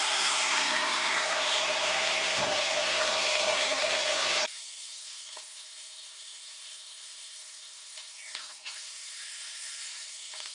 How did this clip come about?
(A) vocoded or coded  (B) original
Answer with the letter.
A